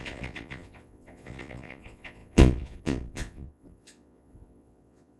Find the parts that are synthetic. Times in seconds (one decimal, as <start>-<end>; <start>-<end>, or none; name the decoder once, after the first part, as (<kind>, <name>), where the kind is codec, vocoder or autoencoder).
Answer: 0.0-5.2 (vocoder, Vocos)